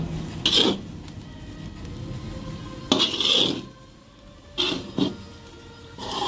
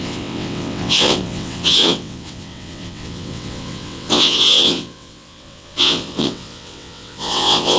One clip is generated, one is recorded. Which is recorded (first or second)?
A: first